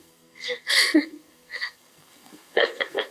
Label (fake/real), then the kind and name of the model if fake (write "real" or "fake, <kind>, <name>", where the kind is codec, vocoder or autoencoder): fake, codec, SNAC